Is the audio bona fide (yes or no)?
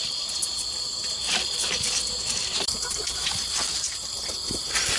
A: no